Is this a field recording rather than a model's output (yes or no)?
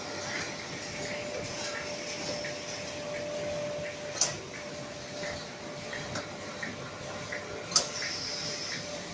yes